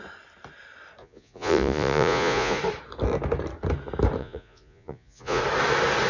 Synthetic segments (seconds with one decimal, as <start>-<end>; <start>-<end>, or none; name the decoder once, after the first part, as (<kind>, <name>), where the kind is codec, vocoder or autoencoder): 1.0-2.6 (vocoder, Vocos); 4.2-5.4